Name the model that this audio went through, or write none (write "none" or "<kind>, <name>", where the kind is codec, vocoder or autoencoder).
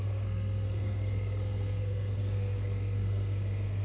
codec, SNAC